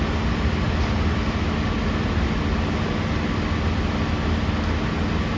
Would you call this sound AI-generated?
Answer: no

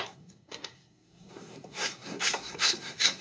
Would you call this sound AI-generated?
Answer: yes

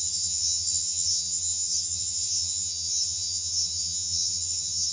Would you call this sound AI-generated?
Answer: yes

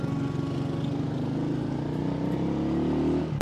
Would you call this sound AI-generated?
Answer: no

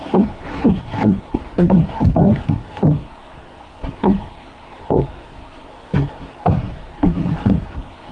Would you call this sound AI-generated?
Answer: yes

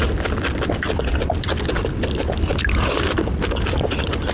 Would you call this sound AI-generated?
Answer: no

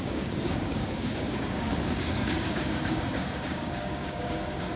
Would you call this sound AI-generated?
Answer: yes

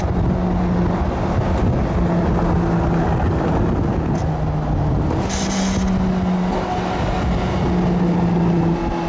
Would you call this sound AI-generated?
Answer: no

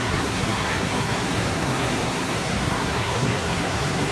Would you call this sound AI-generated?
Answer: yes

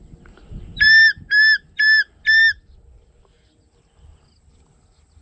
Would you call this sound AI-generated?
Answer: no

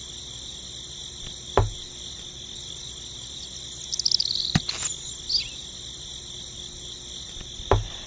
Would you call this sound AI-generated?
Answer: no